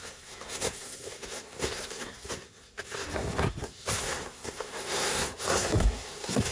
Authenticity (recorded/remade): remade